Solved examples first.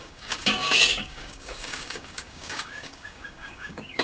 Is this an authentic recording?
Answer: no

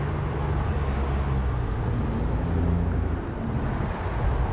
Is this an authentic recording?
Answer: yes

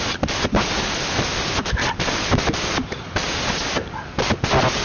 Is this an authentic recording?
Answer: yes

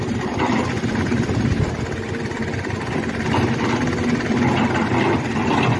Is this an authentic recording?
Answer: yes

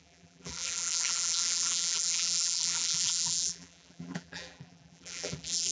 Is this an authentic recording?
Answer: no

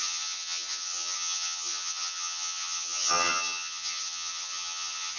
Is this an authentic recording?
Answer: no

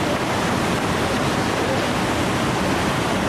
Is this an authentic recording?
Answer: yes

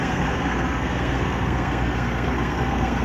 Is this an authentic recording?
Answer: no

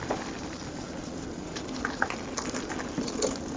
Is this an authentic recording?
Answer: yes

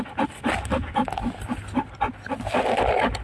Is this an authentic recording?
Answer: yes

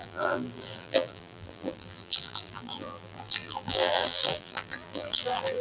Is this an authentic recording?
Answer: no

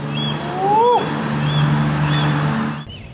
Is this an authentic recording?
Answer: yes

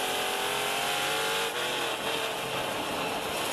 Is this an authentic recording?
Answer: yes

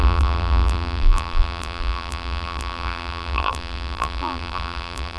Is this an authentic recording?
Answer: no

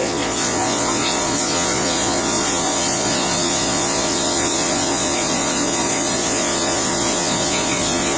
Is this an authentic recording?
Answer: no